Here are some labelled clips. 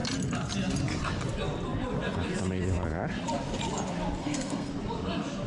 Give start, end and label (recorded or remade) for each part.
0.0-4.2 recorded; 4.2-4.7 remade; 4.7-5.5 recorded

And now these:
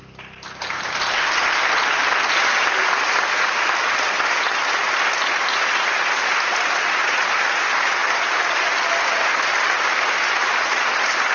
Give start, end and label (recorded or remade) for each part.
0.0-11.3 recorded